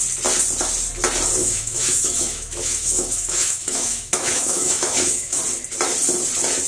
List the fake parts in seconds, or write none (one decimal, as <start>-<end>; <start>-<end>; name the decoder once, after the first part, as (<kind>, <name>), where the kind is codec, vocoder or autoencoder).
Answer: 1.4-5.4 (autoencoder, DAC-VAE)